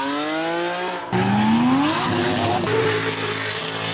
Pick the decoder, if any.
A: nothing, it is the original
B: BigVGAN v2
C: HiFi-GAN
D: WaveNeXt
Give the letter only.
A